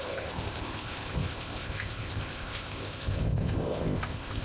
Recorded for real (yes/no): no